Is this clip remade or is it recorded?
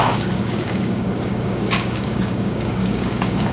remade